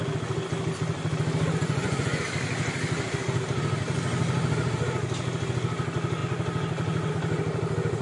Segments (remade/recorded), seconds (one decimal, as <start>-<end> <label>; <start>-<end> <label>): 0.0-1.6 recorded; 1.6-2.2 remade; 2.2-8.0 recorded